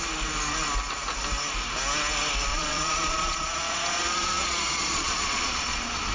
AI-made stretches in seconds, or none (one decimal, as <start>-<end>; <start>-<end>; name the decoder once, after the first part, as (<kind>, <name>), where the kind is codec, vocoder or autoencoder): 2.5-6.1 (vocoder, Vocos)